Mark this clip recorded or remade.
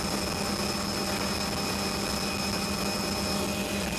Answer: recorded